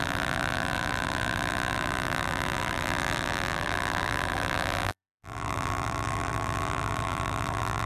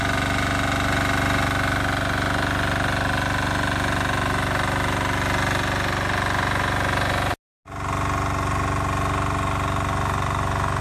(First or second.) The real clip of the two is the second